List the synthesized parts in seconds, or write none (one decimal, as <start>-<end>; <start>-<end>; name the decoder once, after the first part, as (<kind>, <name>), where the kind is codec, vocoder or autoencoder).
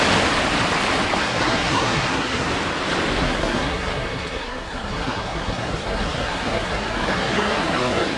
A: 1.2-2.5 (codec, SNAC); 3.2-8.2